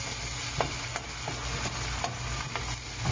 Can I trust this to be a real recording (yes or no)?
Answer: yes